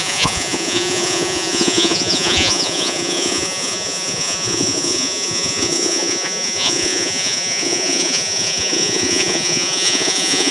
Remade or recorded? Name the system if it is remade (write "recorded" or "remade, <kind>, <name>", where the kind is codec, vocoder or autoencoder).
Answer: remade, vocoder, Vocos